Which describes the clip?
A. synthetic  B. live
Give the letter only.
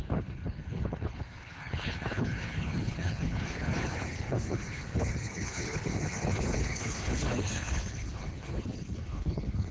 A